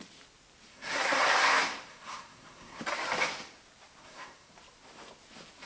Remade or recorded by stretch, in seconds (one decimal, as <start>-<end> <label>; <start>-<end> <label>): 0.0-0.7 recorded; 0.7-1.2 remade; 1.2-1.9 recorded; 1.9-2.8 remade; 2.8-4.0 recorded; 4.0-4.5 remade; 4.5-5.7 recorded